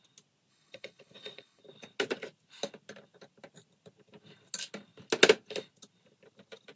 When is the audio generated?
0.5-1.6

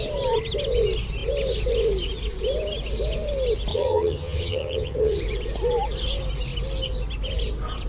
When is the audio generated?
3.7-5.2